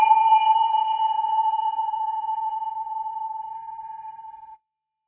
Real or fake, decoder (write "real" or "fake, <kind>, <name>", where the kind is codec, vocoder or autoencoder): fake, codec, HILCodec